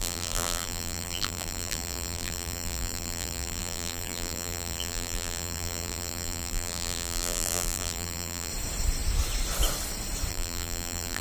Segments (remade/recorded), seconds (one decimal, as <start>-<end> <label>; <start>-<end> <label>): 0.0-8.5 remade; 8.5-10.3 recorded; 10.3-11.2 remade